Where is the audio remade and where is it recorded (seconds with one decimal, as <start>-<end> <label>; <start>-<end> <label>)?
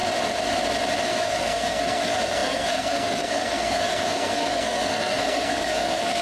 0.0-1.1 recorded; 1.1-6.2 remade